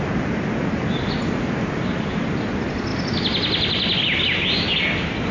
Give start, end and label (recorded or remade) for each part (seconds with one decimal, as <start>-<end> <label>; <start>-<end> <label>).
0.0-5.3 recorded